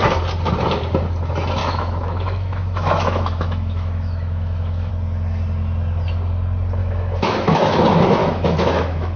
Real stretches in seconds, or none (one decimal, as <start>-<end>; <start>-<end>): 0.0-1.6; 4.9-6.8; 7.8-8.2